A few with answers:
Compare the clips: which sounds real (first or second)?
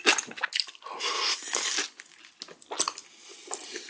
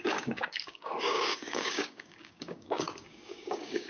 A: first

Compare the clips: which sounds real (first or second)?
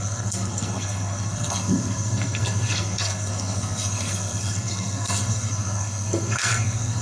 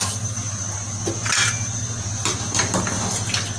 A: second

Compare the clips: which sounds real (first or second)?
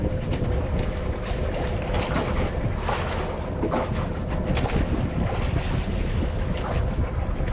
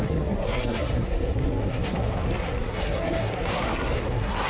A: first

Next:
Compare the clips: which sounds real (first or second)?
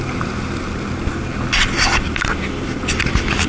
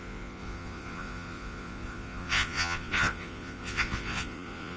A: first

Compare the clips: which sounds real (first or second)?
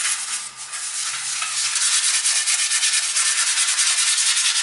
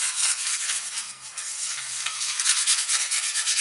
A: first